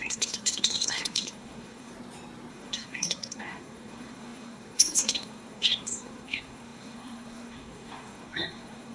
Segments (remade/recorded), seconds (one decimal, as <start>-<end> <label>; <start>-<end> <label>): 0.0-1.9 remade; 1.9-2.5 recorded; 2.5-8.9 remade